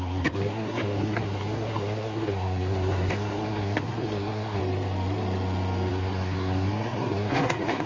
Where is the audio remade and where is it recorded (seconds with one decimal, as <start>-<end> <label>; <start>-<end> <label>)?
0.0-4.6 remade; 4.6-5.9 recorded; 5.9-7.9 remade